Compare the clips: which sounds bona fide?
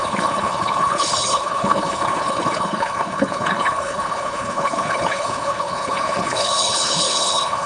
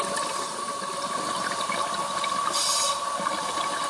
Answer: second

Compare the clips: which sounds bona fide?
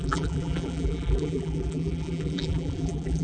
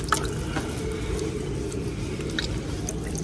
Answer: second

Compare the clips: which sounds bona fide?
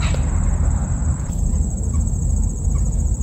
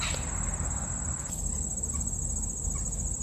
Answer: second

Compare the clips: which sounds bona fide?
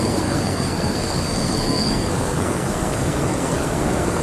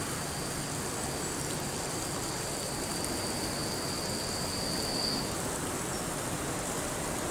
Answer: second